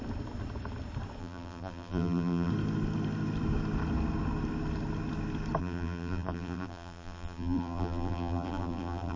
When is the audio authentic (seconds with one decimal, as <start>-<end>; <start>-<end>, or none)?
0.0-1.2; 2.5-5.6